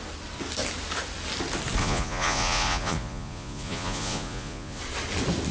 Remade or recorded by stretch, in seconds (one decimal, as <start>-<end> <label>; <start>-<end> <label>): 0.0-1.8 recorded; 1.8-4.8 remade; 4.8-5.5 recorded